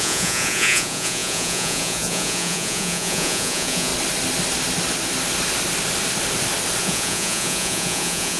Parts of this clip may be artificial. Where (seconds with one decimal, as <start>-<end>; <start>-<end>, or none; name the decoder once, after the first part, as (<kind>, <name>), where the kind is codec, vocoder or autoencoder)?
0.0-3.9 (vocoder, Vocos); 6.8-8.4